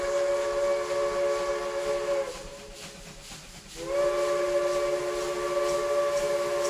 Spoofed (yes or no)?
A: no